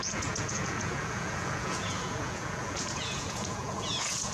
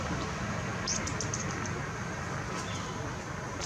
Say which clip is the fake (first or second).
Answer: first